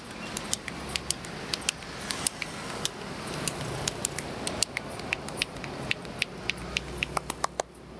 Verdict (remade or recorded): recorded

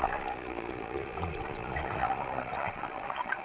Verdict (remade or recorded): remade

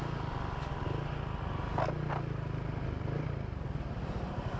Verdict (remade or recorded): recorded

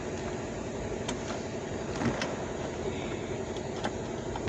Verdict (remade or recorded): recorded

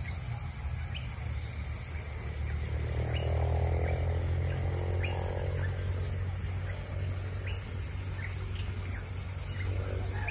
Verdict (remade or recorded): recorded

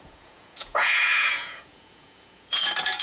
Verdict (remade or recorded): remade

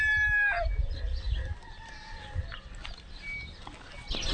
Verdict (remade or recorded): recorded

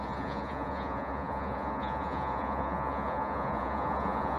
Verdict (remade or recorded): remade